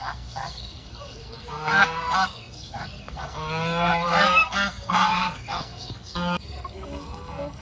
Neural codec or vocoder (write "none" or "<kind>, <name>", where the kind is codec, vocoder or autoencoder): codec, SNAC